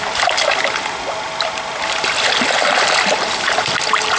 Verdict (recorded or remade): recorded